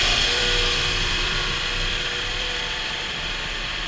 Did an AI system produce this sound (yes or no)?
yes